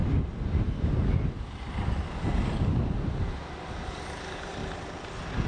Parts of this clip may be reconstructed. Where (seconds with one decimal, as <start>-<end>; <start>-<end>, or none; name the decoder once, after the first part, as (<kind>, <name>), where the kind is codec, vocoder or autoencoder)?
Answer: 3.3-4.6 (vocoder, BigVGAN v2)